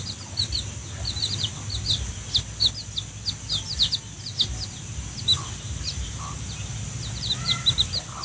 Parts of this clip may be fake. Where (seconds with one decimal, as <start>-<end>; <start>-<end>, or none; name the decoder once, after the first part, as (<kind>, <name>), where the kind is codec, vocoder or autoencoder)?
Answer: 5.3-8.2 (vocoder, BigVGAN v2)